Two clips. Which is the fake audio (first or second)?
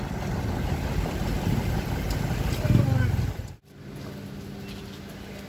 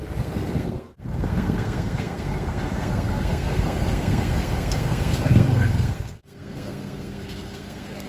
second